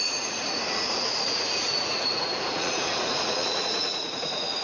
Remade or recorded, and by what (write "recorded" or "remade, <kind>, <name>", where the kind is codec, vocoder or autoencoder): remade, vocoder, Vocos